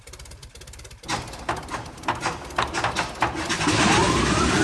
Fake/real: real